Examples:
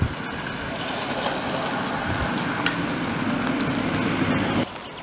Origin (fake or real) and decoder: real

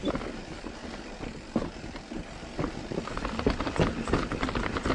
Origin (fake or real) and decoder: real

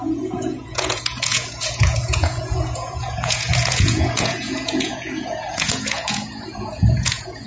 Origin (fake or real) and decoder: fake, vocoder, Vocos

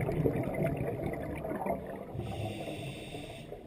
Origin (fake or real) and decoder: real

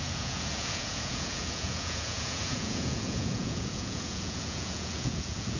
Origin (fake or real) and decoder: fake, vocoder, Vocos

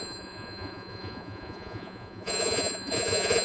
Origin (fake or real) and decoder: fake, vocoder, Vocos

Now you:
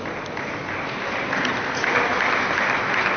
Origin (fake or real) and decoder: real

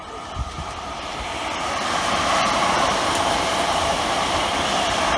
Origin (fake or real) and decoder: fake, vocoder, BigVGAN v2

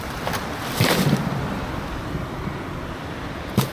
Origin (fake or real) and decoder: fake, vocoder, BigVGAN v2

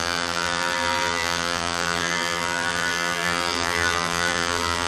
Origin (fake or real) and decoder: fake, vocoder, BigVGAN v2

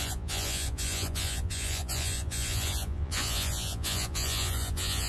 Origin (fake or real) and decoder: fake, vocoder, Vocos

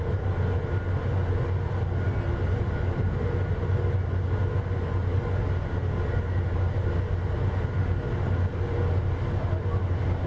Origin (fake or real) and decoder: real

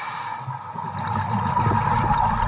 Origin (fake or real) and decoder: real